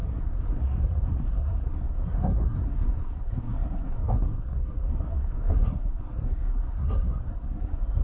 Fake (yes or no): yes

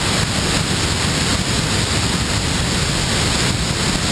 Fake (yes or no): no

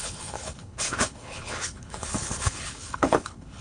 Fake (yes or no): yes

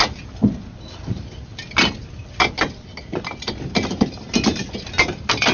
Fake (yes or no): yes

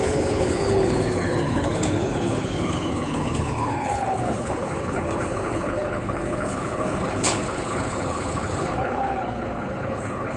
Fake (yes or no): yes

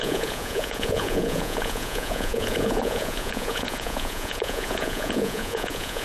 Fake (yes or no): yes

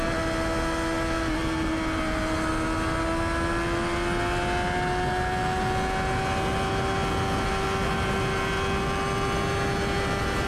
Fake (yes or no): no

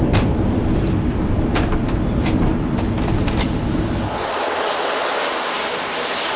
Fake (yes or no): no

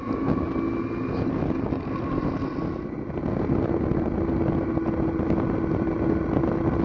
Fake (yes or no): no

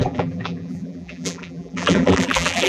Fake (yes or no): yes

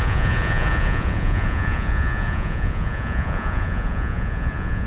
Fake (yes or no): yes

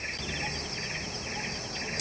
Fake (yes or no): no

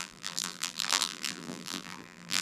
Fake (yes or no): yes